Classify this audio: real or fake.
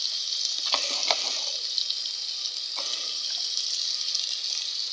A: real